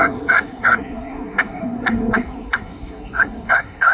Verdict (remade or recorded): remade